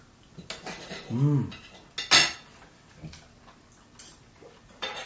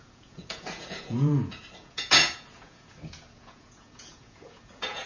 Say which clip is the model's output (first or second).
second